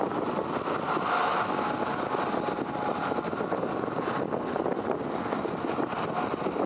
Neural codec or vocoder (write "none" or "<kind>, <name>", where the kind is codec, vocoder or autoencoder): none